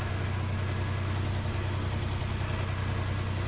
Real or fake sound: real